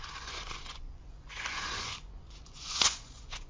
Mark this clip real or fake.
fake